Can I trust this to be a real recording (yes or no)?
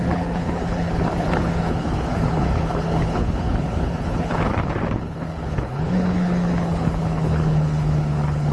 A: no